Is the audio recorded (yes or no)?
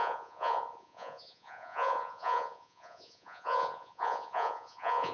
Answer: no